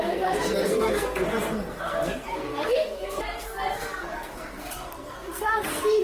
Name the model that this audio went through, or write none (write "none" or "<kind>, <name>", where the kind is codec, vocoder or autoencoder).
codec, SNAC